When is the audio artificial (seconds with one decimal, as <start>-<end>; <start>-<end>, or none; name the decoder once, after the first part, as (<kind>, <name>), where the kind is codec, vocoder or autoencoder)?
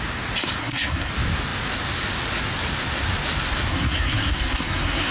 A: 0.6-1.1 (codec, SNAC); 3.7-5.1